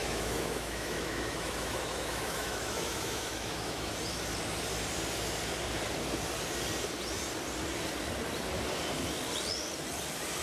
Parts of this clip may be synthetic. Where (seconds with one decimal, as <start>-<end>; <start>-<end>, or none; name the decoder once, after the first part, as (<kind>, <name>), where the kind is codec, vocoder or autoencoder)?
0.0-3.9 (autoencoder, DAC-VAE)